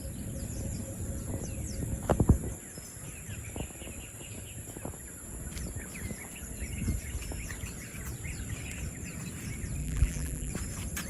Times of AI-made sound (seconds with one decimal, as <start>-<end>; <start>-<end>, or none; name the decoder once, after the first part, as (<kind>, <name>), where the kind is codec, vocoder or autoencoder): 9.8-10.5 (vocoder, BigVGAN v2)